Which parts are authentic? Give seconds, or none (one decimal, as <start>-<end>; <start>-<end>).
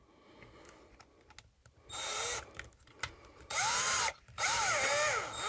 0.0-1.6; 4.9-5.5